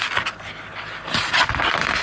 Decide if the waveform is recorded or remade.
recorded